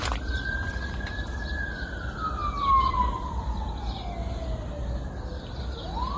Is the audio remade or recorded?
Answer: recorded